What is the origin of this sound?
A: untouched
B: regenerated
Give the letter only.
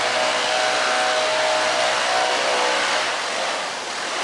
A